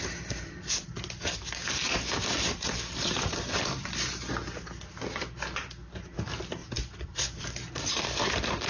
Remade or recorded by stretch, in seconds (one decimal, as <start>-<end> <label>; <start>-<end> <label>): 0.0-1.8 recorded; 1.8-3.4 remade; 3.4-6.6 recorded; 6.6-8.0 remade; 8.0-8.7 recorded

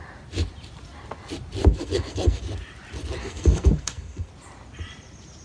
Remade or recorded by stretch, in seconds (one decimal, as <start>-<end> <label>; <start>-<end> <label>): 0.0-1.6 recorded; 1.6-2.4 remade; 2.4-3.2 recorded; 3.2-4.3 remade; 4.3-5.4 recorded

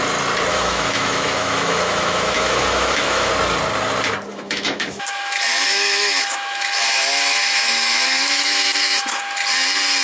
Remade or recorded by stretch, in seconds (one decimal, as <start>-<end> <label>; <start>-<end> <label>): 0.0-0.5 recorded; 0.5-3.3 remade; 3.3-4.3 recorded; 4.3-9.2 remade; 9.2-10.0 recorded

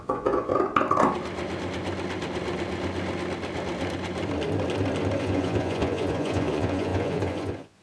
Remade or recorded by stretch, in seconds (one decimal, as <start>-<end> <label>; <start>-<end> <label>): 0.0-0.5 remade; 0.5-5.2 recorded; 5.2-7.8 remade